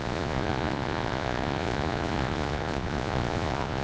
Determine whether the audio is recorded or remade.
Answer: remade